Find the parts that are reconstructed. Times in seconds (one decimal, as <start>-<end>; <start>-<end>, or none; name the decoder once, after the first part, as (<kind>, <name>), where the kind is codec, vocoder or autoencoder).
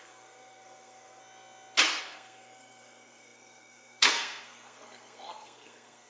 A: 0.0-1.2 (codec, SNAC); 2.0-6.1